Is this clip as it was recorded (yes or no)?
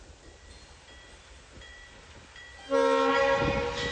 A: yes